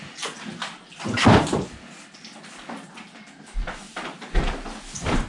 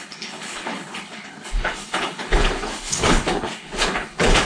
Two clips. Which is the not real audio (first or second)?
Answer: second